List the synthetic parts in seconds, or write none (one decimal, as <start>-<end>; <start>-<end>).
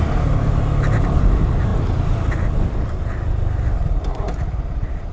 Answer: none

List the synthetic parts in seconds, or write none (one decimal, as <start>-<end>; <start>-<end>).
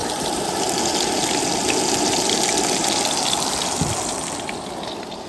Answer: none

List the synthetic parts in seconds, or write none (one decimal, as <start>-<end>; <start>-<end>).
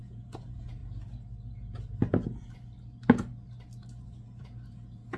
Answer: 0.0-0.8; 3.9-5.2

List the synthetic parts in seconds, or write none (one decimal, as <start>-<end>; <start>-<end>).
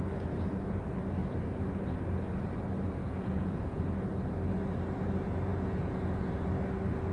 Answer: 3.0-3.8; 5.5-6.3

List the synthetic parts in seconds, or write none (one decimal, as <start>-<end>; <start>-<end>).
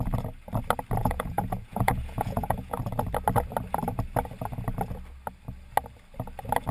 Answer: 1.0-2.8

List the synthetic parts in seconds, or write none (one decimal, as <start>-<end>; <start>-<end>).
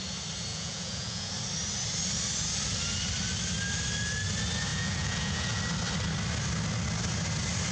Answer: 0.5-1.3; 4.7-5.6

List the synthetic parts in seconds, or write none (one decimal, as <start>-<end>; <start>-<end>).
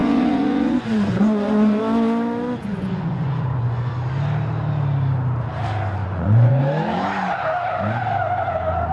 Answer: 0.0-1.8; 2.6-3.9; 6.0-6.6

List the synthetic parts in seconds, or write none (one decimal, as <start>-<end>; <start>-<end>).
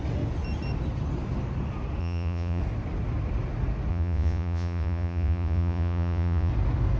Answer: 2.0-2.6; 3.9-6.5